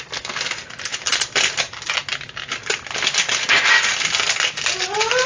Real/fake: real